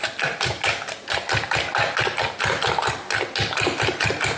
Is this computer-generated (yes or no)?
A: no